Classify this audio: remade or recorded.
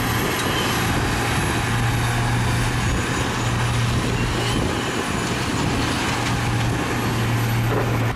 recorded